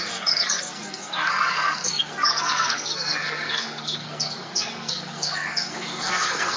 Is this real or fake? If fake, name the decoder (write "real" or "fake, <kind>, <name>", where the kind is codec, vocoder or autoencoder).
fake, codec, SNAC